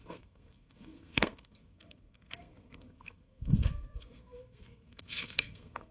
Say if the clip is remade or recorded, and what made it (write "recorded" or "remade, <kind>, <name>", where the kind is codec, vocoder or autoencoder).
remade, codec, SNAC